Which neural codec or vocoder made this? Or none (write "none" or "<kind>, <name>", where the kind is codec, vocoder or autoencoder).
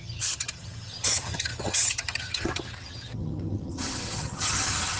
vocoder, HiFi-GAN